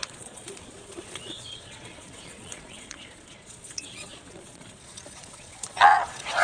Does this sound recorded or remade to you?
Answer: remade